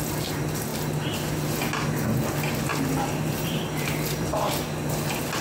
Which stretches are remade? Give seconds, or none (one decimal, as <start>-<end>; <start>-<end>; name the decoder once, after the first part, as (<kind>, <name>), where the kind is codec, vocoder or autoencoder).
2.7-4.5 (vocoder, BigVGAN v2)